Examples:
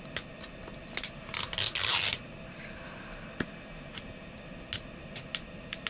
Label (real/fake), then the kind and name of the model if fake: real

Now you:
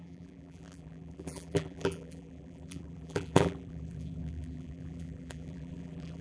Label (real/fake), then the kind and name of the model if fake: fake, vocoder, BigVGAN v2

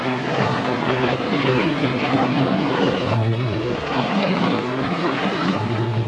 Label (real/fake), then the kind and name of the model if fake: fake, codec, SNAC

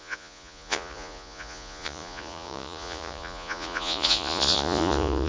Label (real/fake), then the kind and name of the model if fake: fake, vocoder, Vocos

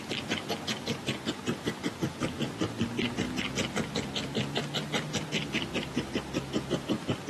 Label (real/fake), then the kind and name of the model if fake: real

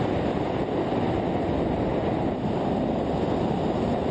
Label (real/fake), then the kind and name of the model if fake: real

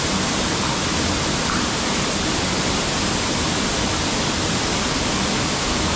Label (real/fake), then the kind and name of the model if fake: fake, vocoder, BigVGAN v2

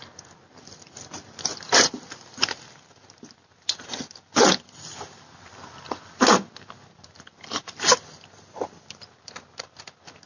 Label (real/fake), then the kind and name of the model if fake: real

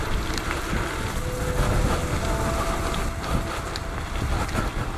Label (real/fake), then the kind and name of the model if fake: real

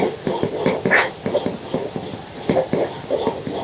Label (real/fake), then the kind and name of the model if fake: real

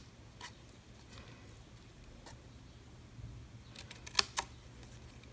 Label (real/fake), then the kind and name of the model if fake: real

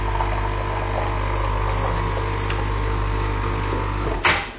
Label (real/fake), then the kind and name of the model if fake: real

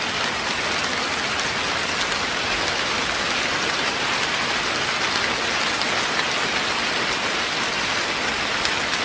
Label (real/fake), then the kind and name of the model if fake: real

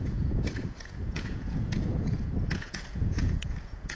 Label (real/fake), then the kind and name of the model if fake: fake, vocoder, Vocos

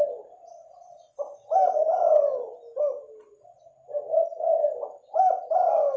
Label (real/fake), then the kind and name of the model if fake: real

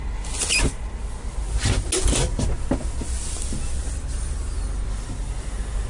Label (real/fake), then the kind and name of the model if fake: real